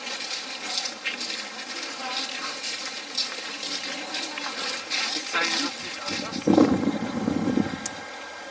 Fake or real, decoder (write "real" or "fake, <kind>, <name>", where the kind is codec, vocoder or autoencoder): real